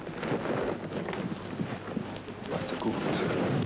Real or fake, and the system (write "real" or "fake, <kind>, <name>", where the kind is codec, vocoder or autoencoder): real